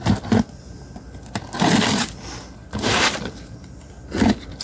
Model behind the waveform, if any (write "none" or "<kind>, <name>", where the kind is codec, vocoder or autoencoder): none